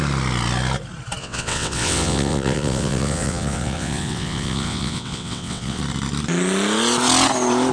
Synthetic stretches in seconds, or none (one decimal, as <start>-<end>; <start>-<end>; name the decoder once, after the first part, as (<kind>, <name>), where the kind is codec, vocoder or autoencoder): 1.2-5.8 (vocoder, WaveNeXt)